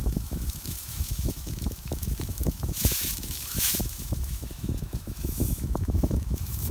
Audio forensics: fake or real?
fake